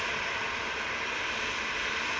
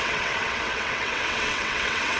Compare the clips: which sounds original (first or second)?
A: first